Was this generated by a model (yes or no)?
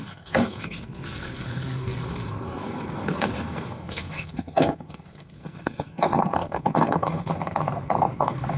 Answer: yes